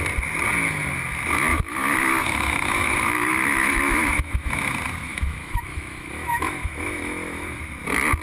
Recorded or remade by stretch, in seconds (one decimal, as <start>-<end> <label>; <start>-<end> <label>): 0.0-1.5 recorded; 1.5-4.5 remade; 4.5-5.1 recorded; 5.1-7.6 remade; 7.6-8.2 recorded

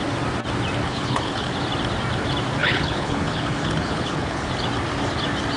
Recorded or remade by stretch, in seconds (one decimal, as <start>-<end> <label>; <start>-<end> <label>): 0.0-0.8 recorded; 0.8-1.5 remade; 1.5-2.6 recorded; 2.6-4.5 remade; 4.5-5.6 recorded